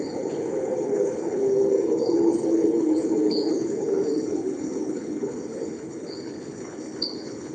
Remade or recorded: remade